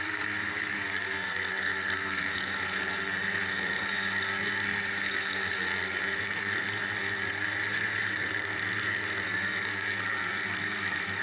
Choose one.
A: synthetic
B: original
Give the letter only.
A